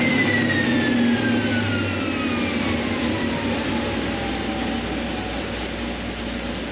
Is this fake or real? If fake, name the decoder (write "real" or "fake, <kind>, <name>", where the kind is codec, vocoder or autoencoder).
real